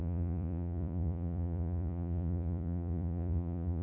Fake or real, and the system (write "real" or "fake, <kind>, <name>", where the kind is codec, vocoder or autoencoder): fake, vocoder, Vocos